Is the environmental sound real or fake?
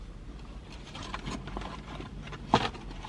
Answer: real